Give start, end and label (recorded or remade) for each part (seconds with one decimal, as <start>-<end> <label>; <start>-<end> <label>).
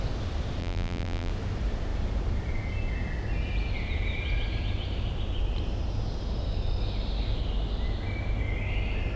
0.0-0.6 recorded; 0.6-1.3 remade; 1.3-9.2 recorded